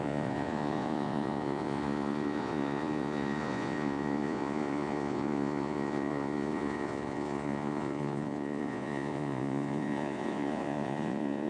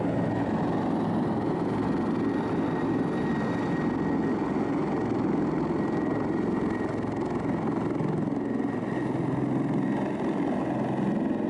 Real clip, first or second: second